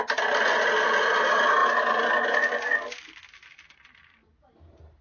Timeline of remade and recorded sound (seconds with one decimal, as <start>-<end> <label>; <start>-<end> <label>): 0.0-5.0 recorded